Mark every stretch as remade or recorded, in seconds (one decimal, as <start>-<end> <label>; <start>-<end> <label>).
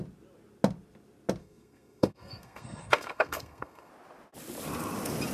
0.0-1.4 recorded; 1.4-3.9 remade; 3.9-5.3 recorded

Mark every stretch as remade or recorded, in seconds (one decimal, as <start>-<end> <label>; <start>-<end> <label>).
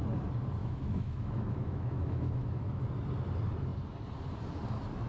0.0-0.6 recorded; 0.6-2.9 remade; 2.9-5.1 recorded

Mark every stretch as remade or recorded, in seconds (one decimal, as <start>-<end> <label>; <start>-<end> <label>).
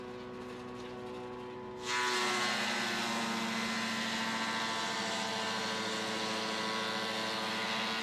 0.0-8.0 recorded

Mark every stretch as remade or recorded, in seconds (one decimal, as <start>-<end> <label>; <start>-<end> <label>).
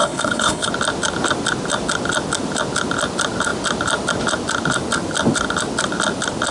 0.0-0.7 remade; 0.7-6.5 recorded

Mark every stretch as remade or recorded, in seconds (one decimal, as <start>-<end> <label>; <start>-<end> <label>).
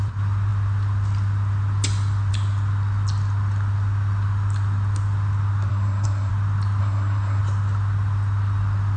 0.0-5.7 recorded; 5.7-6.3 remade; 6.3-6.8 recorded; 6.8-7.4 remade; 7.4-9.0 recorded